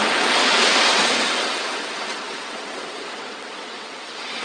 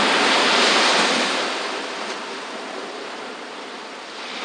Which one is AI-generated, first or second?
first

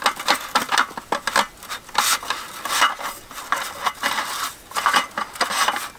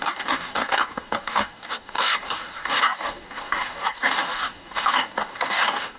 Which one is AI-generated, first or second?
second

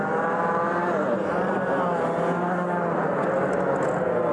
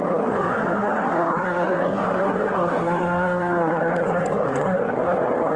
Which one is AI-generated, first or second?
second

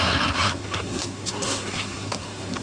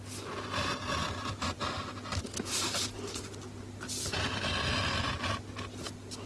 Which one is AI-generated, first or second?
first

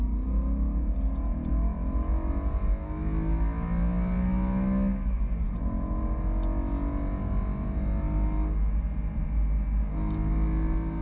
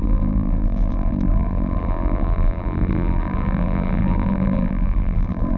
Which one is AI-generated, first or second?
second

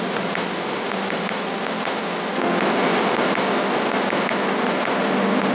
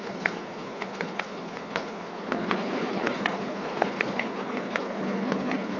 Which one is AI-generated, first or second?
second